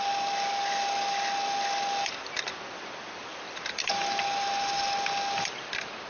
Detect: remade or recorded recorded